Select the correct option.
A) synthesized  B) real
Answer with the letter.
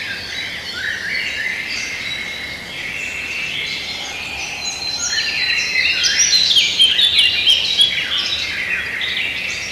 B